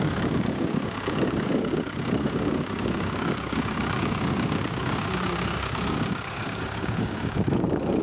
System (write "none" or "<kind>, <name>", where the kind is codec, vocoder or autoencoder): codec, DAC